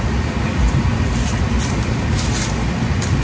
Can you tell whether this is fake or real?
real